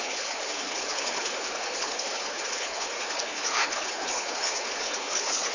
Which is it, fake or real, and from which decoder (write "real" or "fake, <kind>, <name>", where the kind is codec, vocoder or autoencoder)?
fake, codec, HILCodec